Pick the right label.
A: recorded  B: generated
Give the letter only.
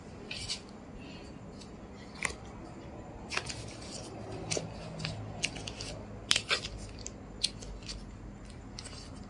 A